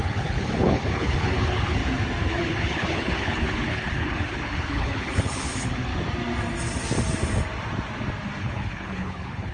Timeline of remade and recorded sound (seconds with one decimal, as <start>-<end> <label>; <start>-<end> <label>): 0.0-1.8 remade; 1.8-2.3 recorded; 2.3-5.9 remade; 5.9-8.4 recorded; 8.4-9.5 remade